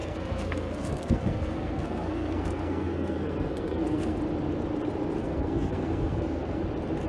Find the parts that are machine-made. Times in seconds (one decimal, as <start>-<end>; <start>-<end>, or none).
0.0-4.2; 5.2-6.6